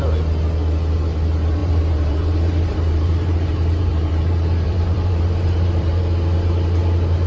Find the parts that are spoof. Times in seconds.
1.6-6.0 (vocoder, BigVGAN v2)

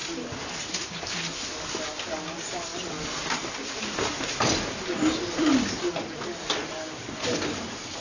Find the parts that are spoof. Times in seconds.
none

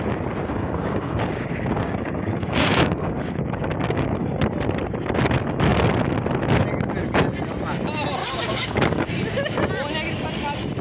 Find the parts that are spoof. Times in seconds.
0.5-4.4 (codec, DAC); 8.2-9.1

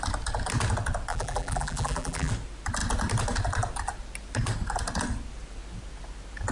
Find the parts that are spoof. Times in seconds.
1.1-2.3 (vocoder, BigVGAN v2)

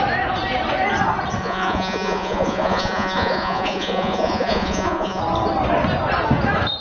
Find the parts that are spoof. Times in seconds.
1.4-5.2 (vocoder, Vocos)

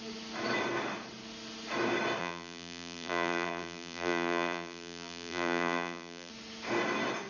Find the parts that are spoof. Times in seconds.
2.2-6.3 (vocoder, BigVGAN v2)